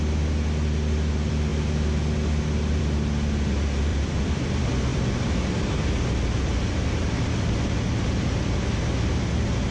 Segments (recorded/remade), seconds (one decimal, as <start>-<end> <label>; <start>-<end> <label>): 0.0-3.9 recorded; 3.9-4.5 remade; 4.5-4.9 recorded; 4.9-7.6 remade; 7.6-9.7 recorded